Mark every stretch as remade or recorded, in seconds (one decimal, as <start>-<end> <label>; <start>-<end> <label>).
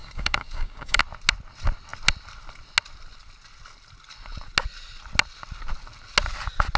0.0-1.0 remade; 1.0-6.8 recorded